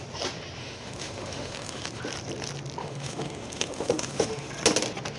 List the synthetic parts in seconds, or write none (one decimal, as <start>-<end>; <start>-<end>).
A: 0.6-2.0; 2.8-4.5